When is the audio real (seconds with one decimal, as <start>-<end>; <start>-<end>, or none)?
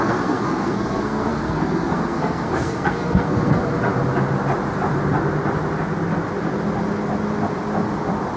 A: 3.6-8.4